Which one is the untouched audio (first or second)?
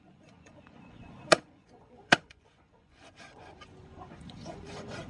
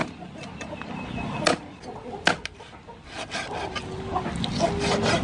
second